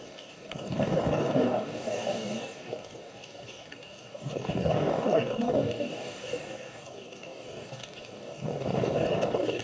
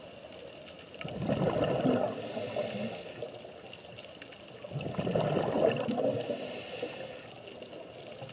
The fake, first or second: first